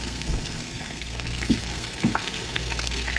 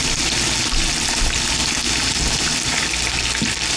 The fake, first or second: first